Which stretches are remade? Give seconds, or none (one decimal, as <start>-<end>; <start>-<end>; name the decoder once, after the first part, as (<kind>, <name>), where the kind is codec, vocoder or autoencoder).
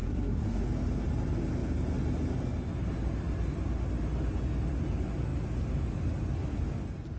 0.0-0.6 (codec, SNAC)